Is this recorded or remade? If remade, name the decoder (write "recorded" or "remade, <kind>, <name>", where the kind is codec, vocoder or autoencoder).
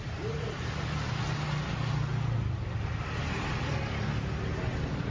recorded